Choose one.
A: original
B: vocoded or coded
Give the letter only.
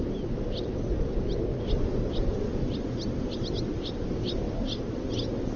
A